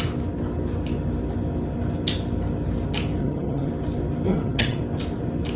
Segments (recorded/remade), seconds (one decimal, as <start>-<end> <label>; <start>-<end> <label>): 0.0-3.2 recorded; 3.2-3.7 remade; 3.7-4.3 recorded; 4.3-4.8 remade; 4.8-5.6 recorded